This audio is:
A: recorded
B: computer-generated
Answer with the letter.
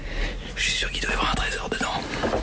A